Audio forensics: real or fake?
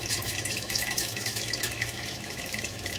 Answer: fake